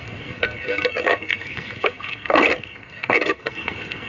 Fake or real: fake